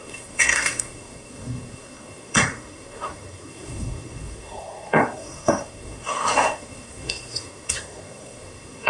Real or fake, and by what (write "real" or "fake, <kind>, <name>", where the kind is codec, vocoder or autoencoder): fake, codec, SNAC